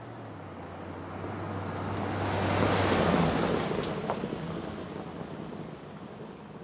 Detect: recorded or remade recorded